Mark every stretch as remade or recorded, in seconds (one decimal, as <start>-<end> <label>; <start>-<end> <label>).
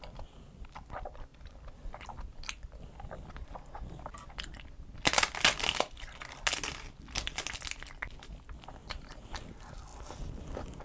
0.0-8.8 recorded; 8.8-9.3 remade; 9.3-10.8 recorded